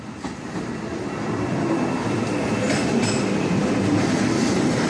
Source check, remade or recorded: recorded